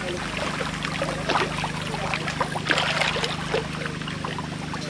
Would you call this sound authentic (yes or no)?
yes